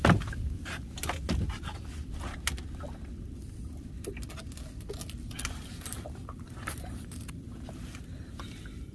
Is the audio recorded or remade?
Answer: recorded